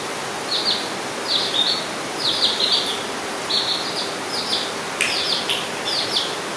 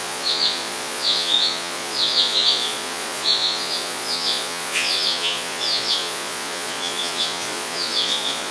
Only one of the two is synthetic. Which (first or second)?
second